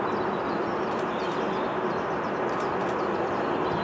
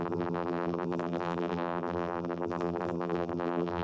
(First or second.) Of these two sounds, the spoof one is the second